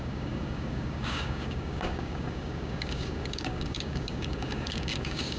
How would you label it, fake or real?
fake